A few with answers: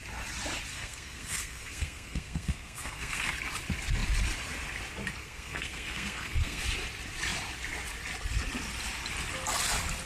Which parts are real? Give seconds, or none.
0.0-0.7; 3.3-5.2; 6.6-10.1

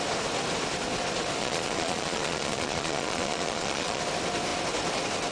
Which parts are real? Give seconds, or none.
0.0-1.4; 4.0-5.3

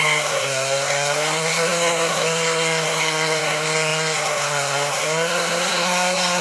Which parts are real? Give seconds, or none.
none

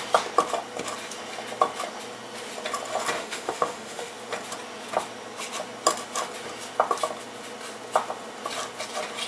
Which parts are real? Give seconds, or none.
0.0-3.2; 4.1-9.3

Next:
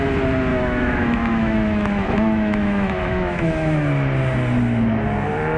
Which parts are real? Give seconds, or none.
0.0-0.5; 3.9-5.6

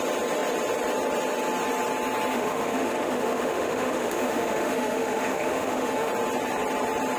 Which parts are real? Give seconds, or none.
0.0-2.3; 6.1-7.2

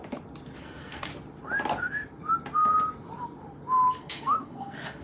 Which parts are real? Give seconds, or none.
0.0-0.6; 1.1-3.9